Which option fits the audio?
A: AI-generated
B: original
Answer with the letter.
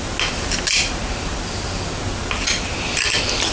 B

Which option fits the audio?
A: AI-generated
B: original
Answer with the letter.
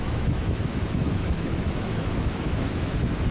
A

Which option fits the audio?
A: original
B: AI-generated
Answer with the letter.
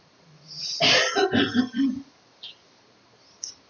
A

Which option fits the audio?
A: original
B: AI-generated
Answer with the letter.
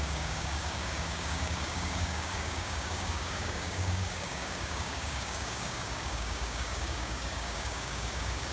B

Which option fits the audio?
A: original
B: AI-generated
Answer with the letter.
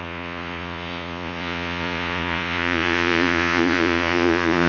B